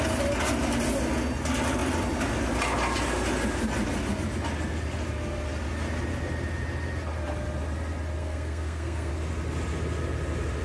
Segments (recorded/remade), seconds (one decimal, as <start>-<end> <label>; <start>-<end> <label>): 0.0-8.2 recorded; 8.2-9.1 remade; 9.1-10.6 recorded